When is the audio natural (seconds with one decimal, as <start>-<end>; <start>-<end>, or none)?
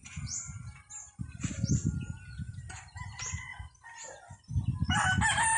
0.0-5.6